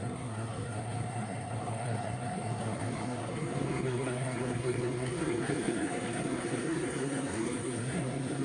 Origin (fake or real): fake